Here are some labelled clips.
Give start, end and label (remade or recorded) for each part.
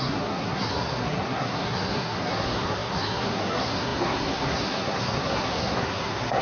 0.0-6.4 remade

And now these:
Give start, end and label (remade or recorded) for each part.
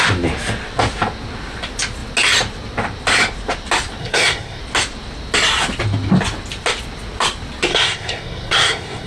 0.0-4.0 recorded; 4.0-4.6 remade; 4.6-7.7 recorded; 7.7-9.1 remade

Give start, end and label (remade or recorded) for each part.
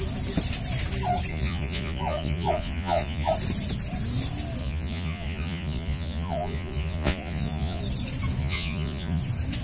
0.0-1.3 recorded; 1.3-3.3 remade; 3.3-4.6 recorded; 4.6-7.8 remade; 7.8-8.4 recorded; 8.4-9.2 remade; 9.2-9.6 recorded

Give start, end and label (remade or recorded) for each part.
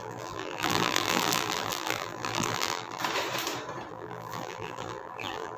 0.0-3.0 remade; 3.0-3.9 recorded; 3.9-5.6 remade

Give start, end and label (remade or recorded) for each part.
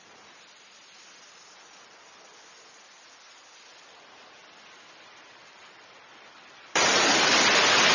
0.0-6.1 recorded; 6.1-6.9 remade; 6.9-7.9 recorded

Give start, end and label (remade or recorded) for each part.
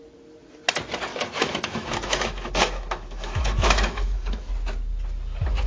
0.0-1.1 recorded; 1.1-4.5 remade; 4.5-5.7 recorded